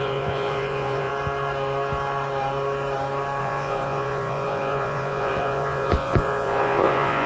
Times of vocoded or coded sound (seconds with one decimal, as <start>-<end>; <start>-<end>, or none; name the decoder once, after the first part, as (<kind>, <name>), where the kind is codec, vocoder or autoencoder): 0.0-1.1 (vocoder, Vocos); 3.4-7.3